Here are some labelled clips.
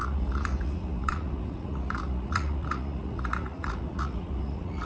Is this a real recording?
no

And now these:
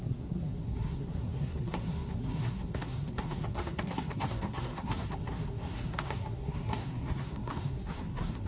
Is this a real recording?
no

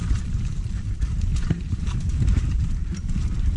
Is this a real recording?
no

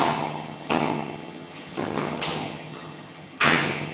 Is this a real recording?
no